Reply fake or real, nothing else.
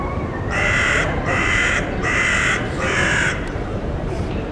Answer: fake